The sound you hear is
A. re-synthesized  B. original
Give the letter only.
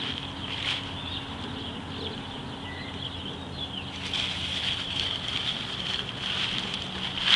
B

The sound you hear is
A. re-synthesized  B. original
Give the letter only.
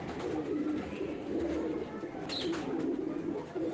B